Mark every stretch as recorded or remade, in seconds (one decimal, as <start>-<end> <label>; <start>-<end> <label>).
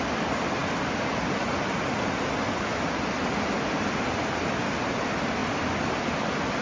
0.0-6.6 recorded